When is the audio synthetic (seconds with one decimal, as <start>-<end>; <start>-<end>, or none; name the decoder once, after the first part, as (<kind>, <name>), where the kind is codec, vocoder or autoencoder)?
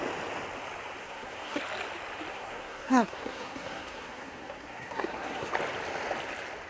1.0-1.6 (codec, SNAC); 2.3-5.5